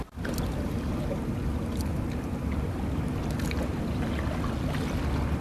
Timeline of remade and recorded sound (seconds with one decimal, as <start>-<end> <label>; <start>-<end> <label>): 0.0-5.4 recorded